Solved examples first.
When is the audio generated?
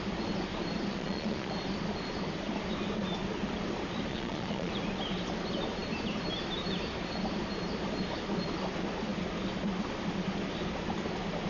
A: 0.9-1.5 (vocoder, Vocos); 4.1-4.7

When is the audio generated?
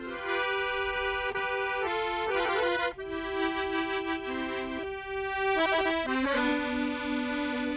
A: none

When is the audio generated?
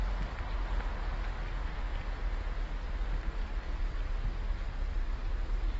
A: 1.9-5.8 (vocoder, BigVGAN v2)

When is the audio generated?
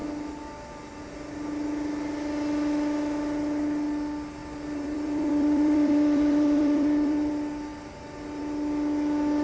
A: 4.4-7.3 (vocoder, BigVGAN v2)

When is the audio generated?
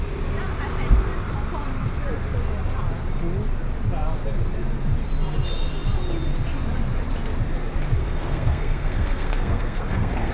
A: 8.0-10.3 (codec, SNAC)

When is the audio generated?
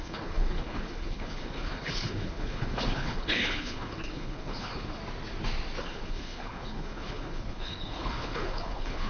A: 0.0-5.0 (codec, HILCodec); 5.8-9.1